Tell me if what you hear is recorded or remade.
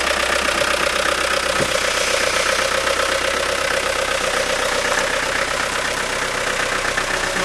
recorded